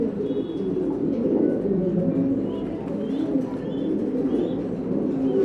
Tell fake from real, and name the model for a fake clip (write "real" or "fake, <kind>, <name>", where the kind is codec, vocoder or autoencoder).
real